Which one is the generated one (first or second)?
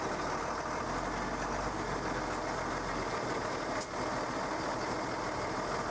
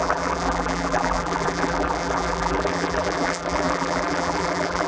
second